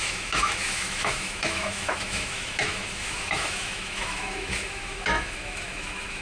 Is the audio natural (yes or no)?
no